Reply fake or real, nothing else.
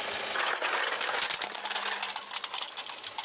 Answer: real